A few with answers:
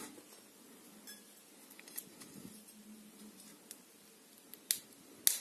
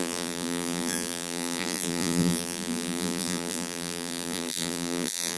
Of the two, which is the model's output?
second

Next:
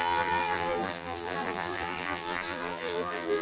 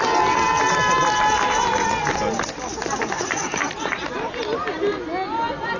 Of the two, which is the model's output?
first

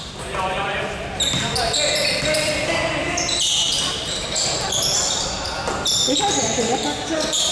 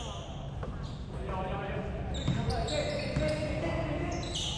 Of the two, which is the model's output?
first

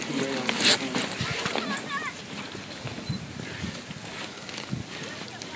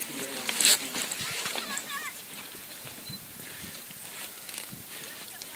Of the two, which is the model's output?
second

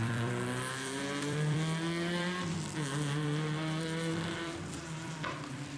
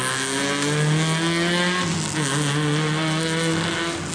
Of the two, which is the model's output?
first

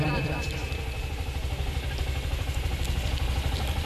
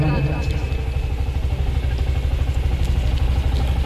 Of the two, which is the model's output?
first